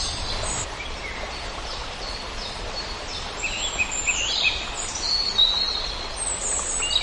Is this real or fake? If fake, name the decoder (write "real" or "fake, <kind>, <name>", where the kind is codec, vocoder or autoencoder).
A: real